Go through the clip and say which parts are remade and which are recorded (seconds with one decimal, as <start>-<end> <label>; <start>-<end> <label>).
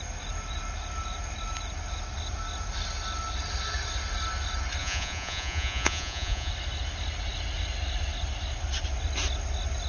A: 0.0-4.8 recorded; 4.8-6.5 remade; 6.5-9.9 recorded